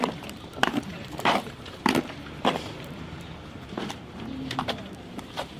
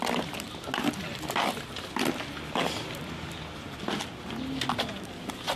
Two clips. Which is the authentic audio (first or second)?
second